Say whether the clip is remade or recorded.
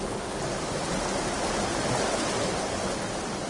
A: recorded